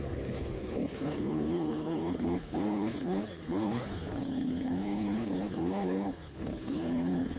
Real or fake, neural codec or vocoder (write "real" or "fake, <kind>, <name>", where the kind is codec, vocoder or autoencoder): fake, codec, HILCodec